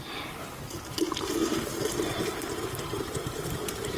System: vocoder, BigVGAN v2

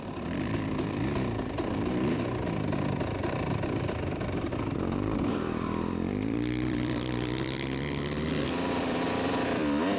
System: vocoder, BigVGAN v2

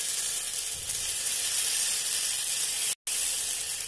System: none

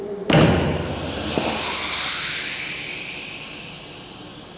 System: none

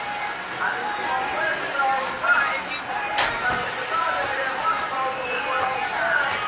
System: none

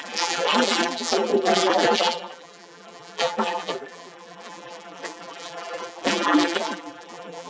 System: vocoder, BigVGAN v2